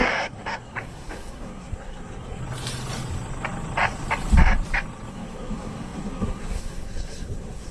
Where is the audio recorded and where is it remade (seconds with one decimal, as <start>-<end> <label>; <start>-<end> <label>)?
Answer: 0.0-2.4 remade; 2.4-5.1 recorded; 5.1-7.7 remade